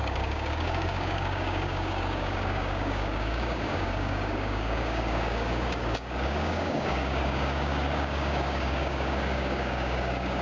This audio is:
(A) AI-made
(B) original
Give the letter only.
A